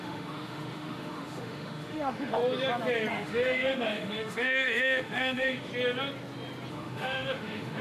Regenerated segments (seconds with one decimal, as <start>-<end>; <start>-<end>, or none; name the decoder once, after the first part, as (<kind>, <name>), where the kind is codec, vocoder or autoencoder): 0.0-2.4 (autoencoder, DAC-VAE); 3.1-5.7; 6.7-7.8